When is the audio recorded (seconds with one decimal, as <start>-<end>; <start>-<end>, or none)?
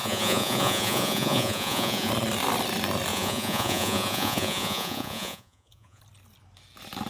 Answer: 2.1-3.1; 6.0-7.1